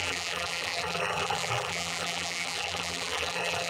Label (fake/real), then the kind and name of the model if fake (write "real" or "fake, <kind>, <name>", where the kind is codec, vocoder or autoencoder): fake, vocoder, BigVGAN v2